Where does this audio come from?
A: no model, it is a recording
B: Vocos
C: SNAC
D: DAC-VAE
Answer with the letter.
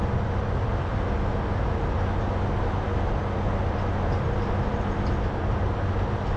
A